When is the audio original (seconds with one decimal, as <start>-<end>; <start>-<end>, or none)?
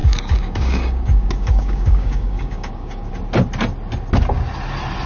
3.1-5.1